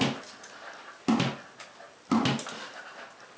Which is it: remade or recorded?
recorded